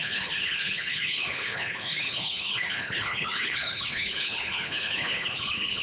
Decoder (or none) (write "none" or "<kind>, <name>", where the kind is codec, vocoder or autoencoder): codec, HILCodec